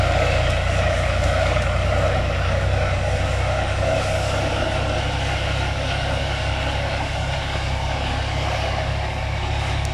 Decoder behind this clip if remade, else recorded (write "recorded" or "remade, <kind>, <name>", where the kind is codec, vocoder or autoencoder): remade, codec, DAC